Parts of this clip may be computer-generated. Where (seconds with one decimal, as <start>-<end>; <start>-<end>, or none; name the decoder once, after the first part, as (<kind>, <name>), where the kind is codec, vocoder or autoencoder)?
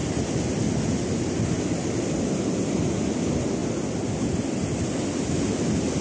none